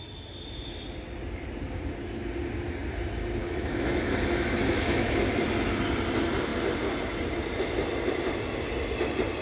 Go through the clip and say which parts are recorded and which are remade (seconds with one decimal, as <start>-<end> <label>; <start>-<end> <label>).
0.0-3.4 recorded; 3.4-5.1 remade; 5.1-9.4 recorded